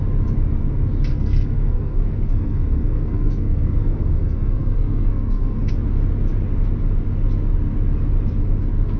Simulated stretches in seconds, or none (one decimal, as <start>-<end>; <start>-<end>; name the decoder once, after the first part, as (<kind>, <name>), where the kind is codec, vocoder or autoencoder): 1.1-5.7 (codec, SNAC)